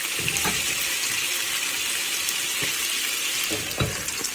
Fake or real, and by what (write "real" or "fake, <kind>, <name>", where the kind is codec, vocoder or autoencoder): real